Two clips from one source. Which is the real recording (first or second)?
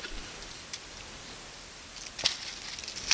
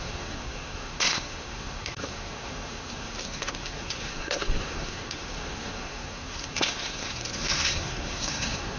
first